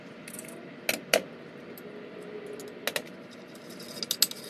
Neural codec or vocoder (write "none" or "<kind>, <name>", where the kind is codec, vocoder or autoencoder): none